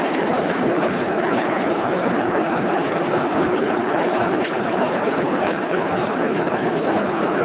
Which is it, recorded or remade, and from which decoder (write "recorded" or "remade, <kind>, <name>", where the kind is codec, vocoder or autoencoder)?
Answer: remade, codec, HILCodec